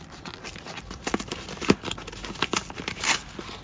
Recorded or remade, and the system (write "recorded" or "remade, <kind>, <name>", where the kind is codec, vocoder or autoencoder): recorded